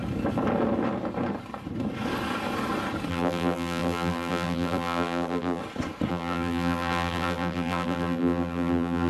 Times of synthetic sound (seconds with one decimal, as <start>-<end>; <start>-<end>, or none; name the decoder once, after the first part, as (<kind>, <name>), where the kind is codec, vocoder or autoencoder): 3.1-5.6 (vocoder, BigVGAN v2); 6.1-9.1